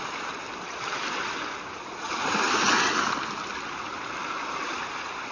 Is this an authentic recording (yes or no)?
yes